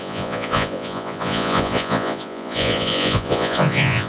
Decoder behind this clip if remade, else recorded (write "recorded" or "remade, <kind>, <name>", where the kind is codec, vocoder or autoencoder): remade, vocoder, Vocos